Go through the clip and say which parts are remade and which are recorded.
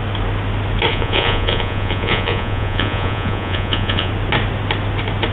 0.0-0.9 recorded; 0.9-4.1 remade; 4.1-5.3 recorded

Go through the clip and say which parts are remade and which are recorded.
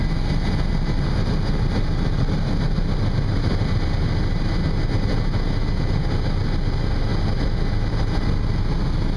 0.0-9.2 recorded